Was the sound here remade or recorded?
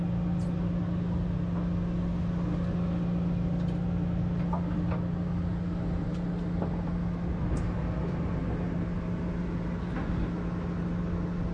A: recorded